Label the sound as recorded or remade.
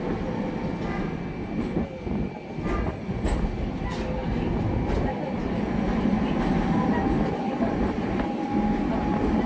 recorded